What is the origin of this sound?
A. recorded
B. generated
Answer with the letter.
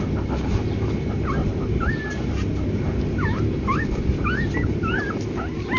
A